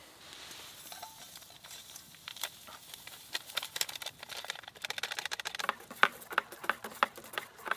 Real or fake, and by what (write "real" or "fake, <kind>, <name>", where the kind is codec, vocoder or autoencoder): fake, vocoder, BigVGAN v2